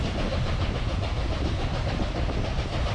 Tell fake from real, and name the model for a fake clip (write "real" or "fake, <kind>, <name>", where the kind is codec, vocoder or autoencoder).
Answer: fake, vocoder, BigVGAN v2